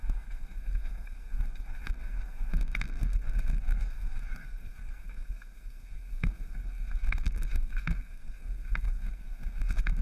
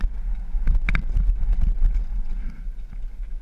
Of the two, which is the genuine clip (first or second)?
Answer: second